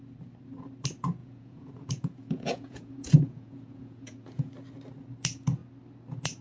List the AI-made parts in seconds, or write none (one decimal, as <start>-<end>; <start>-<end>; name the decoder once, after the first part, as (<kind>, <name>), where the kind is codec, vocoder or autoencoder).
1.2-4.5 (vocoder, Vocos)